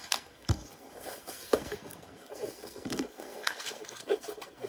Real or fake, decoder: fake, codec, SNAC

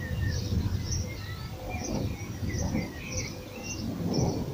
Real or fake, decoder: real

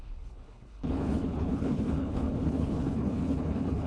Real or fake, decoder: fake, codec, HILCodec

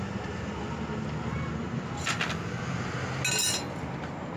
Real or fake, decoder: real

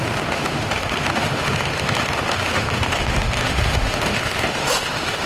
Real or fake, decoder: fake, autoencoder, DAC-VAE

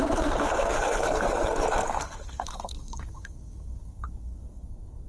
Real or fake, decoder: fake, codec, SNAC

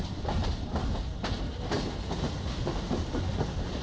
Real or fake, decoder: real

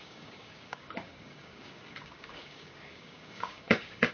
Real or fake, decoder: fake, codec, DAC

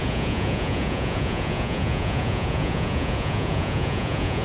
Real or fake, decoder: fake, vocoder, Vocos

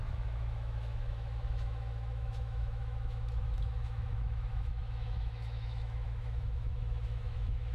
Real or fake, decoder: fake, autoencoder, DAC-VAE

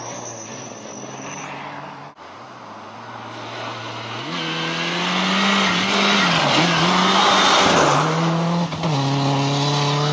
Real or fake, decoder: real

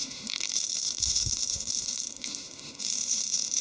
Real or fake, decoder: fake, autoencoder, DAC-VAE